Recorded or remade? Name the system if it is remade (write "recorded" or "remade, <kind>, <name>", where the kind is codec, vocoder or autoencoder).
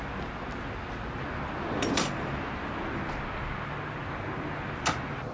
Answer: recorded